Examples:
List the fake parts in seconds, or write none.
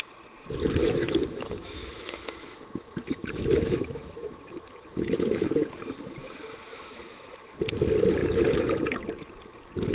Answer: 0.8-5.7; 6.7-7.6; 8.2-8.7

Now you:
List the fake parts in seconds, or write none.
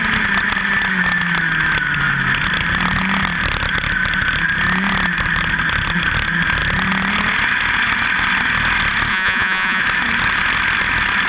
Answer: 9.1-9.8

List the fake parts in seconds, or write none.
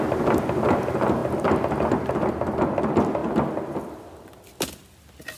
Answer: none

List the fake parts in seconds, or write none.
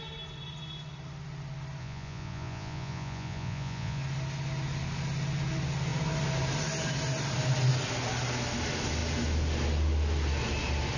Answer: 1.8-4.0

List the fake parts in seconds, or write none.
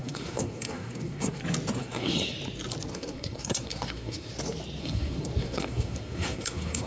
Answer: 0.0-1.4; 1.8-2.4; 2.9-4.3; 4.8-6.9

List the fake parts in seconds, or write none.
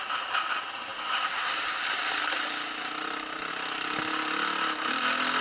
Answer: none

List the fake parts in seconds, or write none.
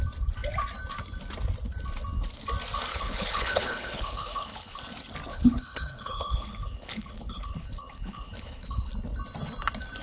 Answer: 2.9-4.8; 5.3-8.9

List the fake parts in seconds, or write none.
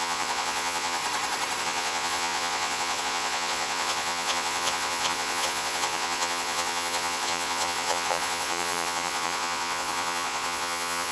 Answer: 0.0-1.0; 1.6-11.1